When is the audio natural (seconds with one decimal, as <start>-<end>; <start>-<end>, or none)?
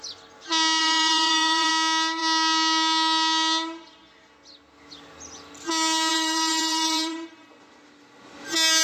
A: 0.0-0.8; 1.7-6.1; 7.5-8.8